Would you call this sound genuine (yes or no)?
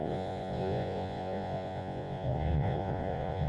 no